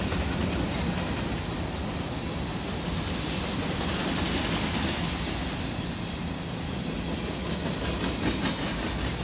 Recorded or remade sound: recorded